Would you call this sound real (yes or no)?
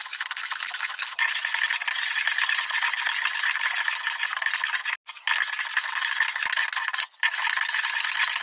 yes